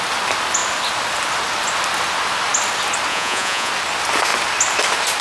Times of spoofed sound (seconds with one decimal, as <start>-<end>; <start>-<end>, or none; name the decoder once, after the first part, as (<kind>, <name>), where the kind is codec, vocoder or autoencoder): 3.1-3.7 (vocoder, Vocos)